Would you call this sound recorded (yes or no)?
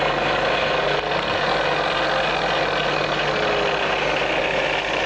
yes